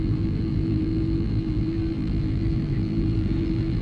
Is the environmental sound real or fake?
fake